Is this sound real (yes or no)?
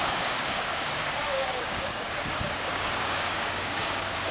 no